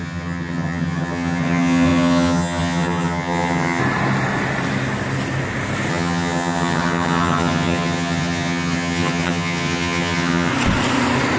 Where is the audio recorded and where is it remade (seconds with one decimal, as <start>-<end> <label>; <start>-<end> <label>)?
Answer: 0.0-3.8 remade; 3.8-5.9 recorded; 5.9-10.5 remade; 10.5-11.4 recorded